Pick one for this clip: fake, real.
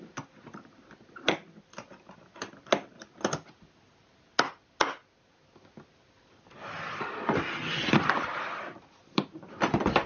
real